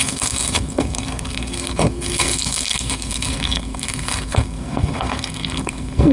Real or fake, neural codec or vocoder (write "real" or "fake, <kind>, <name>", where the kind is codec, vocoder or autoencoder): fake, codec, SNAC